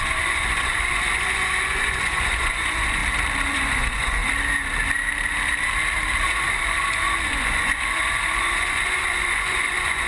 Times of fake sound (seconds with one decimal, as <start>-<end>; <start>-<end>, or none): 0.0-3.0; 3.5-4.2; 6.2-10.1